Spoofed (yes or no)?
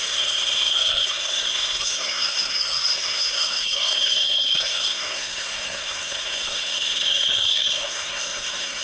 yes